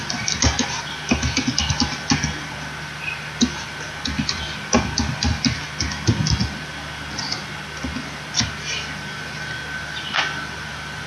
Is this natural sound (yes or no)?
yes